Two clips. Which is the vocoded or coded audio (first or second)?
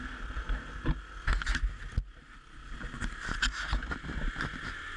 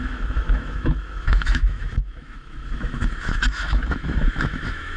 second